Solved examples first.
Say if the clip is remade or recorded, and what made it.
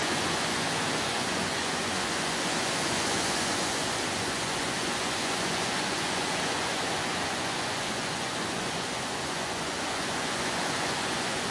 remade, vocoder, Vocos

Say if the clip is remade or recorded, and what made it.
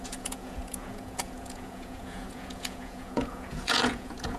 remade, vocoder, Vocos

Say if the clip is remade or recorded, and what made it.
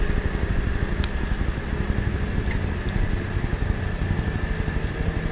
recorded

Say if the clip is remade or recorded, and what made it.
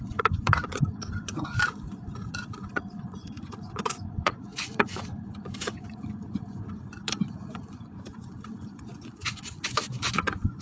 remade, vocoder, Vocos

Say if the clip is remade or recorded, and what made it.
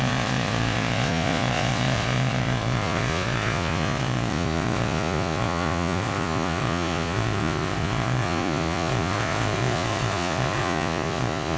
remade, vocoder, Vocos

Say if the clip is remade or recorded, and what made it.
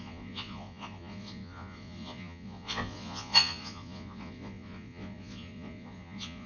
remade, vocoder, Vocos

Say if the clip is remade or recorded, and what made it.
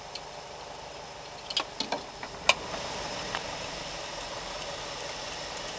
recorded